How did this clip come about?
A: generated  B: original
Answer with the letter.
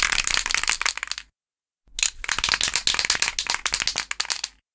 B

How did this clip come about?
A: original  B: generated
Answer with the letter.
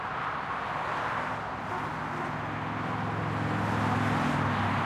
A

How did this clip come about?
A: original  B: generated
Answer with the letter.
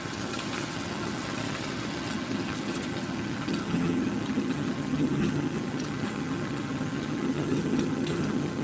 B